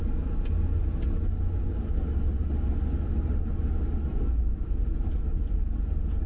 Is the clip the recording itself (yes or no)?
yes